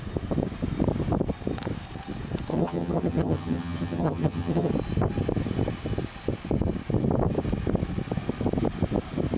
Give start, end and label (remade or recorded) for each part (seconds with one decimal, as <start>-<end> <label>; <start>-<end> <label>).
0.0-2.5 recorded; 2.5-4.7 remade; 4.7-9.4 recorded